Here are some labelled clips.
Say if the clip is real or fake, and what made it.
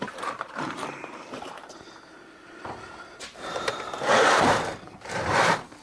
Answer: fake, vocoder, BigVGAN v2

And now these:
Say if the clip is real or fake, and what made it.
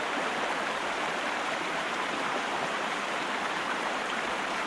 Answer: fake, vocoder, BigVGAN v2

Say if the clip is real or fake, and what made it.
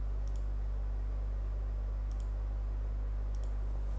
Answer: real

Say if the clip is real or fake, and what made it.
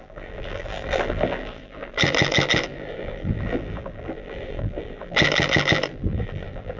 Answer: fake, vocoder, BigVGAN v2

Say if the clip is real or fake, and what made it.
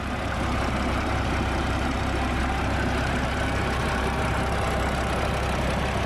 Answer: fake, vocoder, BigVGAN v2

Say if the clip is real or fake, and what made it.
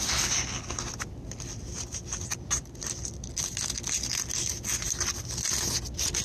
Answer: real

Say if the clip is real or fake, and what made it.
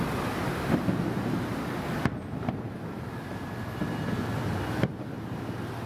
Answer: real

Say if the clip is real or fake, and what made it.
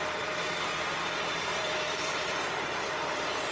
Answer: fake, vocoder, BigVGAN v2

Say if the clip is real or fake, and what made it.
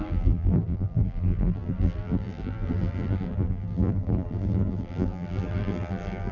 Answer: fake, vocoder, BigVGAN v2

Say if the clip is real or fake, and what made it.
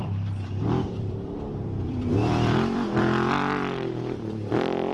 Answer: fake, vocoder, BigVGAN v2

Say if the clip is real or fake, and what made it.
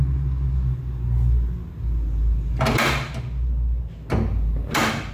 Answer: real